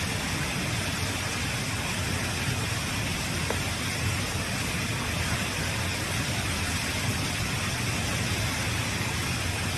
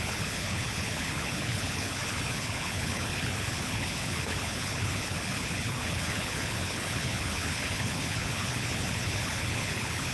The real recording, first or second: first